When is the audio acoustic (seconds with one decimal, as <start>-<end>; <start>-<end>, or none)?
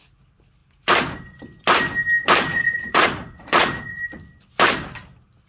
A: 0.0-2.5; 4.0-5.5